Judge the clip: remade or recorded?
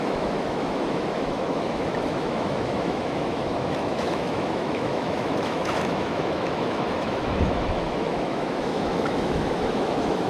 remade